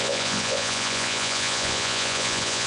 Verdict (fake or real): fake